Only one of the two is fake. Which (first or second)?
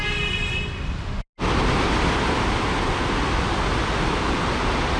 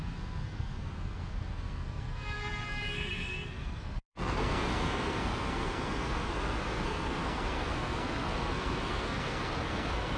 second